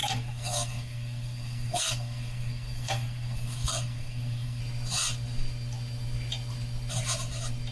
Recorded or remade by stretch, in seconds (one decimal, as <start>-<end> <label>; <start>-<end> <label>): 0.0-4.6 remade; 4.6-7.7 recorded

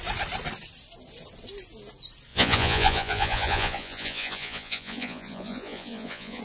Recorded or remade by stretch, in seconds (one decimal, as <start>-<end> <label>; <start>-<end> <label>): 0.0-2.3 recorded; 2.3-6.4 remade

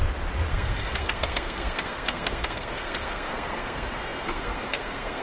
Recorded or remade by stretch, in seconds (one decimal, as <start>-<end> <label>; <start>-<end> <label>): 0.0-0.5 recorded; 0.5-5.2 remade

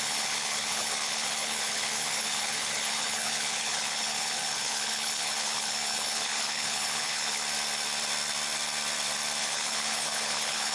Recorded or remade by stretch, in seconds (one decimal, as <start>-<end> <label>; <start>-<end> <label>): 0.0-7.4 remade; 7.4-9.4 recorded; 9.4-10.7 remade

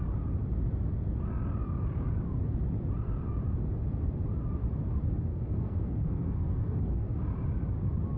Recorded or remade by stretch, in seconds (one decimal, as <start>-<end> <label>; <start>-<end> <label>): 0.0-5.3 recorded; 5.3-7.1 remade; 7.1-8.2 recorded

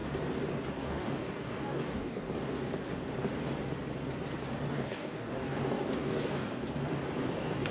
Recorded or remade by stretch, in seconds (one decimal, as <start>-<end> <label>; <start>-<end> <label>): 0.0-0.7 recorded; 0.7-2.5 remade; 2.5-4.7 recorded; 4.7-6.6 remade; 6.6-7.2 recorded; 7.2-7.7 remade